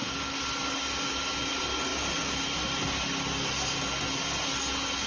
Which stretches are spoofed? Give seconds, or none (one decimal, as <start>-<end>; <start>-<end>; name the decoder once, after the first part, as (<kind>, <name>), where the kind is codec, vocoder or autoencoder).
none